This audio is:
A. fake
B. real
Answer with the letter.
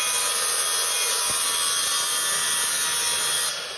B